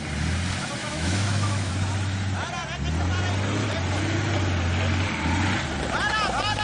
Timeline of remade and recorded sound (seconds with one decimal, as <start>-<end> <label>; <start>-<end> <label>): 0.0-0.8 recorded; 0.8-1.7 remade; 1.7-6.6 recorded